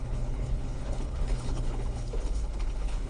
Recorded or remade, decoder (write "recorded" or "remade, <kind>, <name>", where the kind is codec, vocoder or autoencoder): remade, codec, HILCodec